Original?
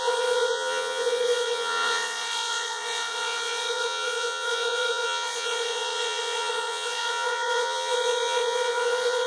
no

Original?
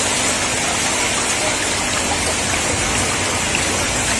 yes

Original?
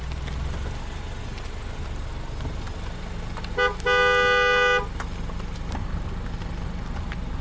yes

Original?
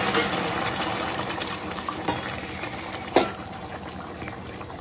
no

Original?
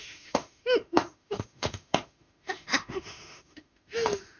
no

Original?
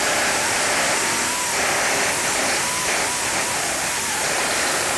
yes